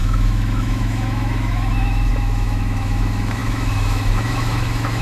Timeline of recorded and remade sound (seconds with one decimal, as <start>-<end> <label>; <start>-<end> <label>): 0.0-5.0 remade